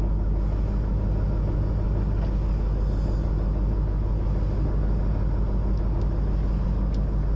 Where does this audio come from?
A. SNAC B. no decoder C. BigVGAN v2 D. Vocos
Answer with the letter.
B